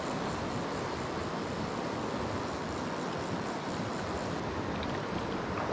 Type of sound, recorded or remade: recorded